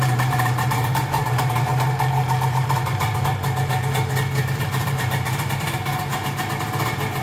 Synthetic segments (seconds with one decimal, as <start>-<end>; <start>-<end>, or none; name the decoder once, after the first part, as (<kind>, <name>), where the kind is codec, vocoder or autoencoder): 0.0-1.7 (vocoder, BigVGAN v2); 4.4-6.1